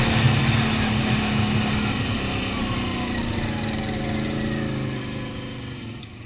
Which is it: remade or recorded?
recorded